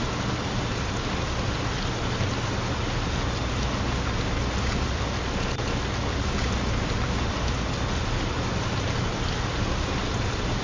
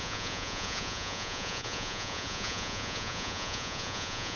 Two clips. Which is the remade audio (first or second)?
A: second